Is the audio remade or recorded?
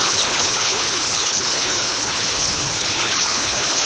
remade